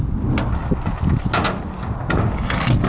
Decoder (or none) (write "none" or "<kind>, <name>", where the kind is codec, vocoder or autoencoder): none